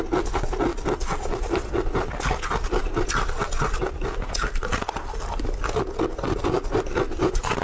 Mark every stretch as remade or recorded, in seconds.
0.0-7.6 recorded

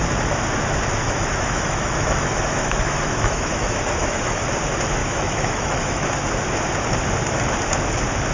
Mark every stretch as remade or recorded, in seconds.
0.0-1.0 recorded; 1.0-4.4 remade; 4.4-5.0 recorded; 5.0-6.1 remade; 6.1-8.3 recorded

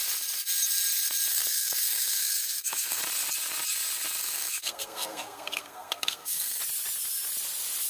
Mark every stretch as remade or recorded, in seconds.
0.0-1.3 recorded; 1.3-3.0 remade; 3.0-4.2 recorded; 4.2-6.6 remade; 6.6-7.9 recorded

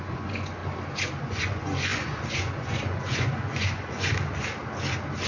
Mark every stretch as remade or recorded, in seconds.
0.0-0.6 remade; 0.6-1.2 recorded; 1.2-4.1 remade; 4.1-5.3 recorded

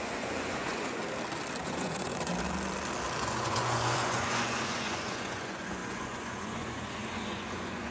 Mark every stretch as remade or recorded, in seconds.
0.0-1.0 remade; 1.0-1.6 recorded; 1.6-2.3 remade; 2.3-3.2 recorded; 3.2-7.9 remade

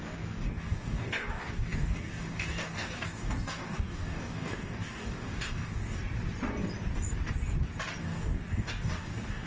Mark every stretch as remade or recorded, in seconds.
0.0-6.0 remade; 6.0-8.0 recorded; 8.0-9.5 remade

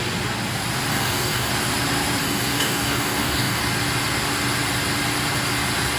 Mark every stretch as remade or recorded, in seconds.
0.0-0.9 recorded; 0.9-1.5 remade; 1.5-2.2 recorded; 2.2-3.6 remade; 3.6-6.0 recorded